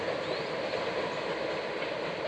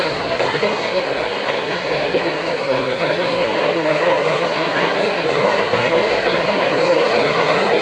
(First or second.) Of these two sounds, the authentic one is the first